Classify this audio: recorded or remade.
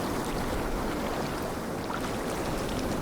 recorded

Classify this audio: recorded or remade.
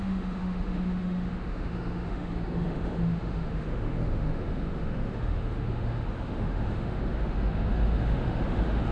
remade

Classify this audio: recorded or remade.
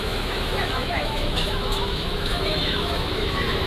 remade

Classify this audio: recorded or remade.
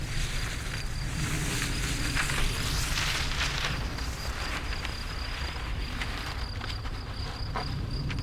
recorded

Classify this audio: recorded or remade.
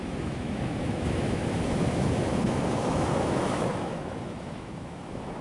remade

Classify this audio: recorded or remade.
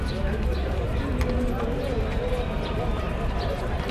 recorded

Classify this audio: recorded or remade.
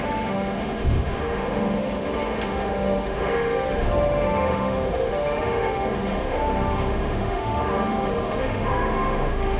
remade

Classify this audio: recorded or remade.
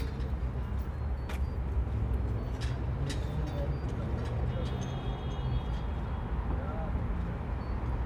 recorded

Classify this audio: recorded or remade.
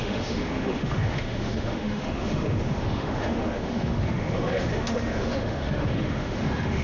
remade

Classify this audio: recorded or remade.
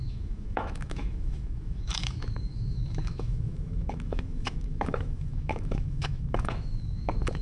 remade